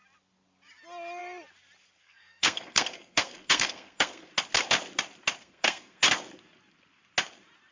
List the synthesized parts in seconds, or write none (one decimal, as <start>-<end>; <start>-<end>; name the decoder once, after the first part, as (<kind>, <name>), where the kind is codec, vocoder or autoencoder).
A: 2.0-4.3 (codec, SNAC); 5.4-6.0